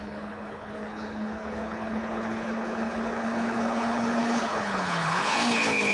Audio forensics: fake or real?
fake